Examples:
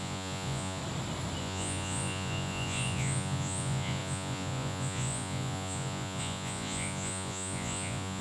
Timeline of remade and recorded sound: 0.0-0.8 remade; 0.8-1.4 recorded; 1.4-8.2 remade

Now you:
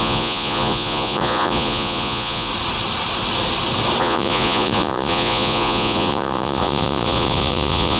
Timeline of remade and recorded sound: 0.0-2.5 remade; 2.5-4.0 recorded; 4.0-8.0 remade

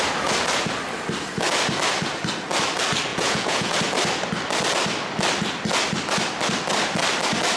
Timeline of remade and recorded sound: 0.0-3.1 recorded; 3.1-3.7 remade; 3.7-7.6 recorded

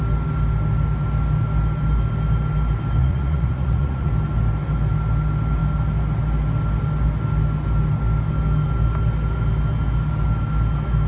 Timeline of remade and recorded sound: 0.0-3.0 recorded; 3.0-4.1 remade; 4.1-11.1 recorded

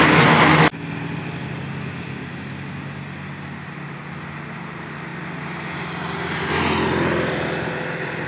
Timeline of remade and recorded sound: 0.0-8.3 recorded

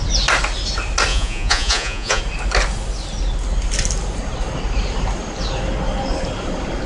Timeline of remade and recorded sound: 0.0-1.1 recorded; 1.1-2.2 remade; 2.2-6.9 recorded

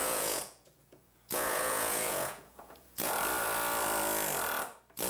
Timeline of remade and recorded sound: 0.0-3.1 remade; 3.1-5.1 recorded

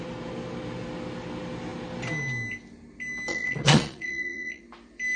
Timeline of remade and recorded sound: 0.0-3.3 recorded; 3.3-4.6 remade; 4.6-5.2 recorded